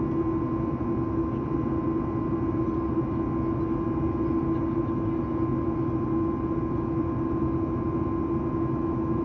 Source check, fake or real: real